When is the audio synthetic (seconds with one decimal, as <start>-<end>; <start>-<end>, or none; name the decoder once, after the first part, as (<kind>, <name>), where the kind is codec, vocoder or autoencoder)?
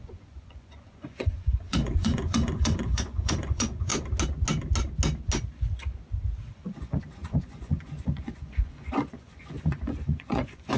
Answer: 0.0-3.9 (vocoder, Vocos); 6.5-10.8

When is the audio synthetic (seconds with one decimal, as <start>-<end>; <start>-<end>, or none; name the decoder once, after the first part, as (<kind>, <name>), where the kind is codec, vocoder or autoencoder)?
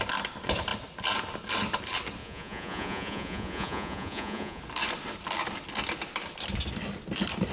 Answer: 2.2-4.6 (vocoder, Vocos)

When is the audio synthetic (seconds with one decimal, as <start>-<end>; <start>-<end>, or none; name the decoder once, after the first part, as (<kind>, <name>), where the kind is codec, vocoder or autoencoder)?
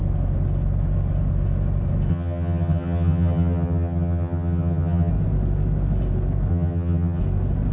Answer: 2.1-5.1 (vocoder, HiFi-GAN); 6.5-7.2